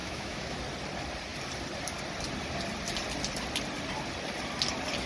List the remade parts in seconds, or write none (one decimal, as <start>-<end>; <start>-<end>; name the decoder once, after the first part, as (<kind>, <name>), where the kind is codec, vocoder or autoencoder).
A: 0.0-0.6 (autoencoder, DAC-VAE)